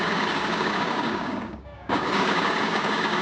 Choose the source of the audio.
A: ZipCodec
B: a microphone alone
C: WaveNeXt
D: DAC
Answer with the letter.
D